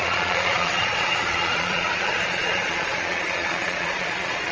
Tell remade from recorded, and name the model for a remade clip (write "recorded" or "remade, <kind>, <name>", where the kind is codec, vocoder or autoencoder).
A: remade, vocoder, Vocos